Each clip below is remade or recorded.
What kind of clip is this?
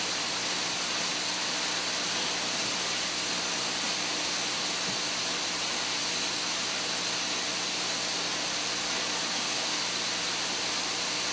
recorded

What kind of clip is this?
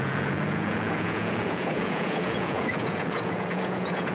remade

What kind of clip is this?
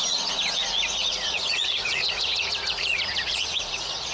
remade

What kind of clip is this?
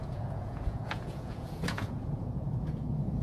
remade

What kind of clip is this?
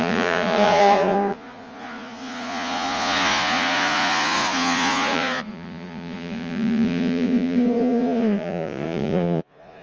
remade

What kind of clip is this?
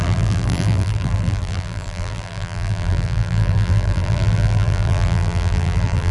remade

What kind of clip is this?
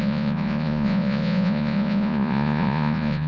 remade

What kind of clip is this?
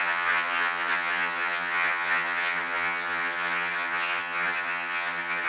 remade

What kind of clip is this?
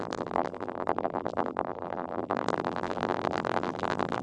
remade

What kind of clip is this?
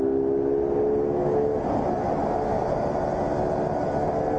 recorded